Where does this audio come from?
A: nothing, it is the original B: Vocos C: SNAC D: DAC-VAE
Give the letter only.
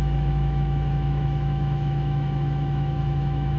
D